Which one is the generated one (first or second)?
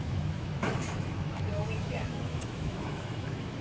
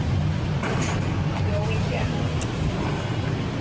first